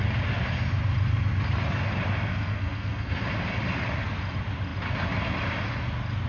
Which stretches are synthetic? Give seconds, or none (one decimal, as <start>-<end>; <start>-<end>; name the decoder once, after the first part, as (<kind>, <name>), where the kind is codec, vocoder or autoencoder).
2.3-3.2 (codec, SNAC)